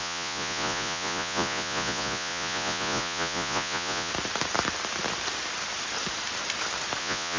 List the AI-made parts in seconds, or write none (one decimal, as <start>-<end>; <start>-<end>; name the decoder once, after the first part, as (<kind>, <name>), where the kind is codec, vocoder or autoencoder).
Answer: 0.0-4.1 (vocoder, Vocos); 7.0-7.4